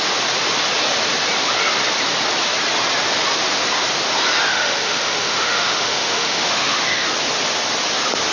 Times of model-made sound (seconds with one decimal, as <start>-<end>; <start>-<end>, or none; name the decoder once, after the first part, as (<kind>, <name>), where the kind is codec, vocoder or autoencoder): 4.5-7.1 (autoencoder, DAC-VAE)